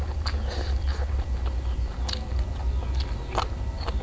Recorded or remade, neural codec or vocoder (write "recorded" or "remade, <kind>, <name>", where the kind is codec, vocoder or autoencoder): recorded